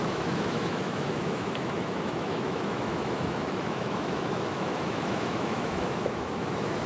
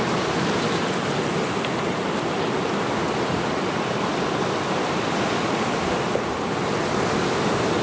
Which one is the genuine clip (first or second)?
second